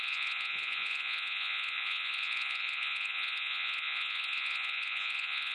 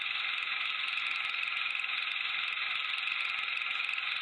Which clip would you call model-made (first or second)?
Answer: first